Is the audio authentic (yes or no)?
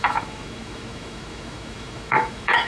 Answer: no